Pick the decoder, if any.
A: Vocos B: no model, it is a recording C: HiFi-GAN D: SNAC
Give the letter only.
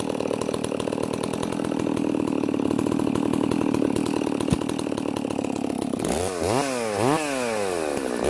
B